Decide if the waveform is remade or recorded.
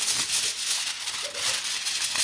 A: recorded